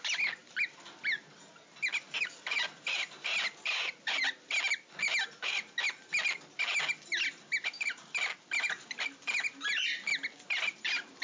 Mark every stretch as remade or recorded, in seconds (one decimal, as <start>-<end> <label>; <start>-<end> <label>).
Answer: 0.0-11.2 recorded